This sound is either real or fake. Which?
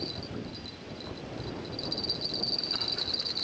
real